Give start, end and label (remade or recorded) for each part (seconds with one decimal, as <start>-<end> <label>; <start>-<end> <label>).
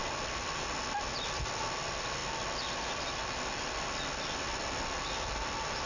0.0-5.9 recorded